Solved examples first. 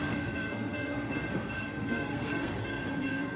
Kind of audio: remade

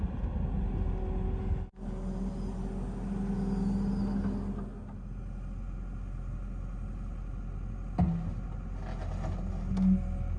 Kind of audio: recorded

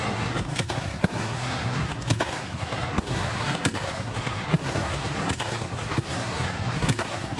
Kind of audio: remade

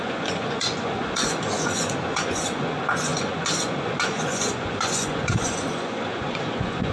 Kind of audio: remade